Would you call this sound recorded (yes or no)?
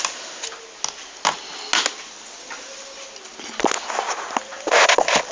yes